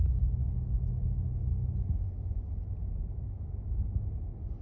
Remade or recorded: recorded